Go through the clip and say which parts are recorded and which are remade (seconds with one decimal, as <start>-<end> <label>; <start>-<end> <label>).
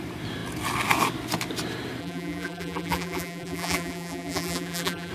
0.0-2.0 recorded; 2.0-5.1 remade